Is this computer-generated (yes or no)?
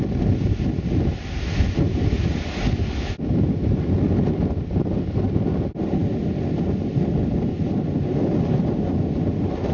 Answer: no